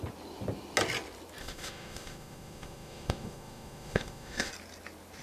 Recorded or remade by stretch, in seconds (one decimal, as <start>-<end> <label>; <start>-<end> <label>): 0.0-1.4 recorded; 1.4-4.5 remade; 4.5-5.2 recorded